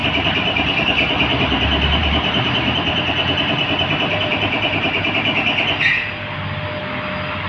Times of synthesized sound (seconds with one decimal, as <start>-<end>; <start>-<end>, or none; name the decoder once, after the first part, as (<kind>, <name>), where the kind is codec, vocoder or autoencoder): 0.0-0.8 (vocoder, BigVGAN v2); 2.0-5.6